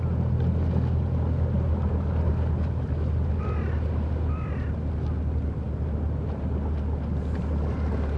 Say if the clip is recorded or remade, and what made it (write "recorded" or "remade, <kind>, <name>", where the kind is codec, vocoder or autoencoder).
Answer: recorded